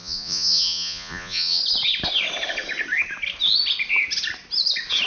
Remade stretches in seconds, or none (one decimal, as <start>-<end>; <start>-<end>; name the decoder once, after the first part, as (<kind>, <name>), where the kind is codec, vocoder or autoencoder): 0.0-1.6 (vocoder, Vocos)